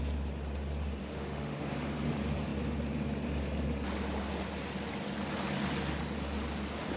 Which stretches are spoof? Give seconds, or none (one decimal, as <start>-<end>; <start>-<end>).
1.0-2.1